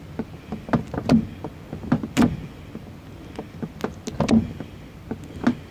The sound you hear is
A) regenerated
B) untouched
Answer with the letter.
B